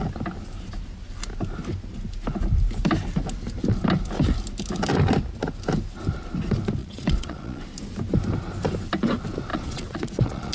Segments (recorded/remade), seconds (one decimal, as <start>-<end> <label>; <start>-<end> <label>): 0.0-6.8 recorded; 6.8-7.6 remade; 7.6-9.5 recorded; 9.5-10.5 remade